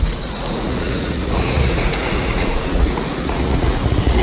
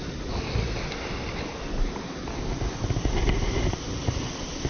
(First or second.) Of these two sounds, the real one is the second